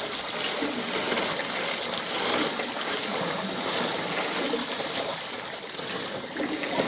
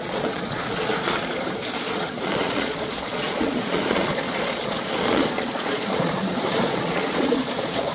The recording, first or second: first